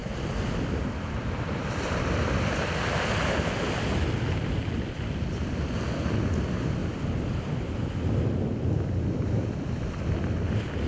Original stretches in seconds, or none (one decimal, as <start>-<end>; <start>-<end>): 0.0-10.9